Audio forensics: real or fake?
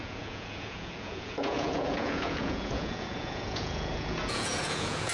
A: fake